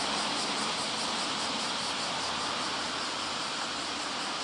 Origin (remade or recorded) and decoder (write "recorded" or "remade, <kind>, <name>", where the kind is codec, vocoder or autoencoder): remade, vocoder, BigVGAN v2